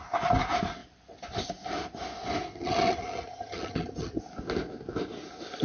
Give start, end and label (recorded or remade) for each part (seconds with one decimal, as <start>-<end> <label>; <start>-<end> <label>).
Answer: 0.0-2.5 recorded; 2.5-4.2 remade; 4.2-5.6 recorded